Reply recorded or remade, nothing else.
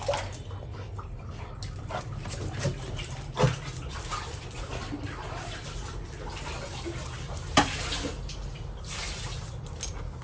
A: recorded